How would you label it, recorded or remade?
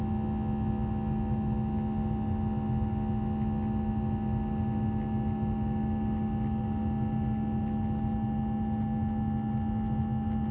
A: recorded